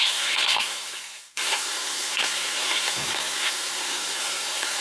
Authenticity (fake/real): fake